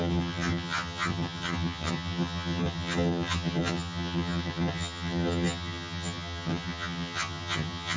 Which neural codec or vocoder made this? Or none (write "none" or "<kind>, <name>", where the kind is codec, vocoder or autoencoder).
vocoder, HiFi-GAN